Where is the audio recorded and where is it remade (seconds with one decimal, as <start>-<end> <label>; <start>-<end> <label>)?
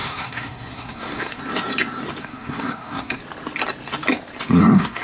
0.0-1.4 remade; 1.4-2.2 recorded; 2.2-3.2 remade; 3.2-4.6 recorded; 4.6-5.0 remade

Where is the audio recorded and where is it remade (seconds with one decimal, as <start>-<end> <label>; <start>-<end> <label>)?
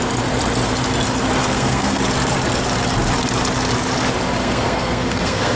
0.0-1.5 recorded; 1.5-2.0 remade; 2.0-4.4 recorded; 4.4-5.6 remade